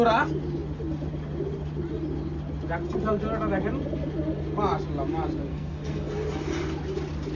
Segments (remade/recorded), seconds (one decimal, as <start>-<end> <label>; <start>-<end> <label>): 0.0-5.5 recorded; 5.5-6.1 remade; 6.1-7.3 recorded